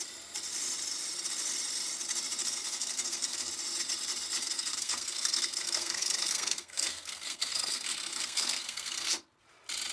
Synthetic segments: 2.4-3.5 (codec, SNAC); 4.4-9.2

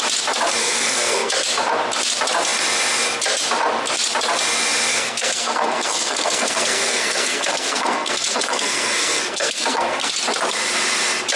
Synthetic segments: 0.6-1.3 (codec, SNAC); 4.9-10.1

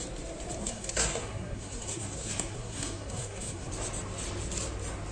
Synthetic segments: 0.6-3.7 (codec, SNAC)

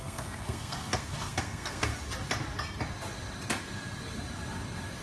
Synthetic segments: 0.0-1.9 (codec, SNAC)